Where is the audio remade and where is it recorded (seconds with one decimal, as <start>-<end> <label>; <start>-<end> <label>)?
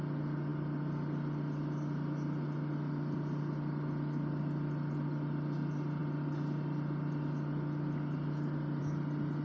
0.0-9.4 recorded